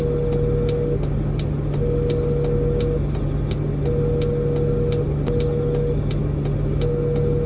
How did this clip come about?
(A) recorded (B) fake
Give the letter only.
A